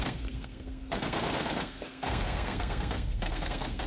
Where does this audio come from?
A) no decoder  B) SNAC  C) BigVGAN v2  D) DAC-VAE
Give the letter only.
B